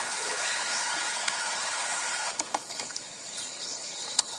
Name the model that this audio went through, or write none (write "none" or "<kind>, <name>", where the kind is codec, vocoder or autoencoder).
codec, HILCodec